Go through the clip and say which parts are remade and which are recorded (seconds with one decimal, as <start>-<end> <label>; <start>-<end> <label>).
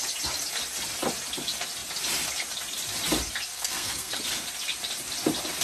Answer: 0.0-3.5 recorded; 3.5-4.2 remade; 4.2-5.6 recorded